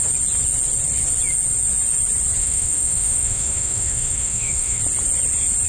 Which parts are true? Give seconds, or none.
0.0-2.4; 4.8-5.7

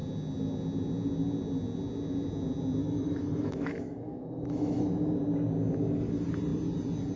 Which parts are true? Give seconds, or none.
0.0-2.8; 4.8-7.2

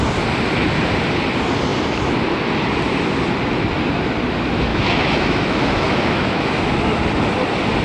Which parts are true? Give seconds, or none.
0.0-4.7; 6.6-7.8

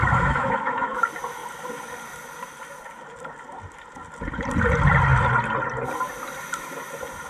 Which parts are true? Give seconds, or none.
1.0-7.3

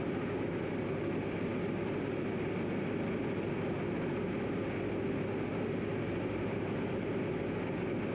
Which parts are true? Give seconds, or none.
0.0-8.1